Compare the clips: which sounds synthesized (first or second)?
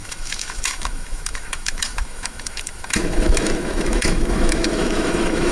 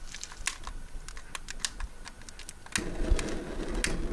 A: first